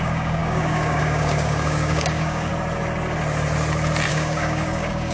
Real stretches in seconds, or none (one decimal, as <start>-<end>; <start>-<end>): 2.5-4.1